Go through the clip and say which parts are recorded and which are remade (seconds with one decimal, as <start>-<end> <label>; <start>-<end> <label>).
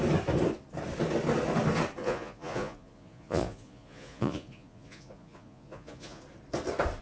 0.0-2.0 recorded; 2.0-6.2 remade; 6.2-7.0 recorded